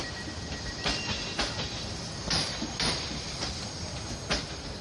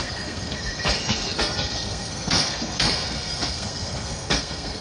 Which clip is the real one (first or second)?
first